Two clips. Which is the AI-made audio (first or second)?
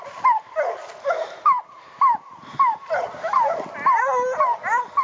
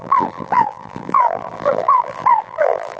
second